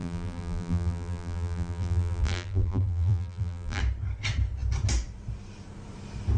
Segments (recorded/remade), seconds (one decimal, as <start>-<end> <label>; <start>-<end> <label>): 0.0-3.8 remade; 3.8-6.4 recorded